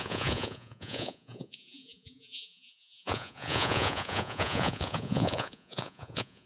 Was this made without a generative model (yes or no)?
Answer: no